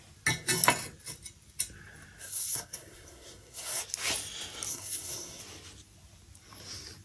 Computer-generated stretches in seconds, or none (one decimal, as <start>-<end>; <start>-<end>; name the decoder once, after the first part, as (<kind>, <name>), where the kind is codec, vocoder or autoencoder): 2.2-3.8 (codec, SNAC); 4.7-5.4